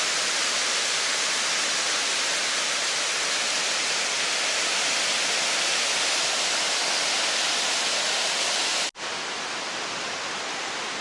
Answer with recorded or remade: recorded